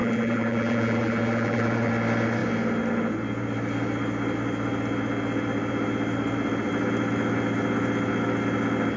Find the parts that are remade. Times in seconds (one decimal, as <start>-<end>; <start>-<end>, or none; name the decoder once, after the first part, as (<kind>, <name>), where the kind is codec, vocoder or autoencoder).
0.0-1.9 (vocoder, BigVGAN v2)